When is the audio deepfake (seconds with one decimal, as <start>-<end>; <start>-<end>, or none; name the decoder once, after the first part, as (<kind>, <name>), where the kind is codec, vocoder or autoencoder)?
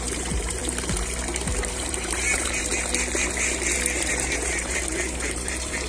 0.0-0.6 (vocoder, BigVGAN v2); 1.7-2.7; 4.1-5.9